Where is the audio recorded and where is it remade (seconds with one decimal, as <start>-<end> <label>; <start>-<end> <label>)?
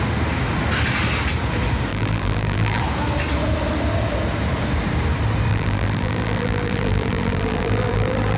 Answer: 0.0-1.9 recorded; 1.9-2.8 remade; 2.8-5.5 recorded; 5.5-8.4 remade